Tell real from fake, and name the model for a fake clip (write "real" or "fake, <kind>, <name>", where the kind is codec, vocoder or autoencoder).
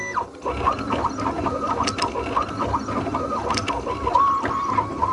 real